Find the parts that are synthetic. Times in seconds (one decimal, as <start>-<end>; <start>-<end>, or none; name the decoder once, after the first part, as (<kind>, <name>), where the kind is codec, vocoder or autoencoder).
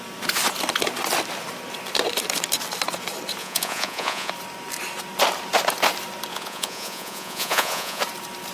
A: 3.4-4.3 (vocoder, Vocos); 6.3-8.0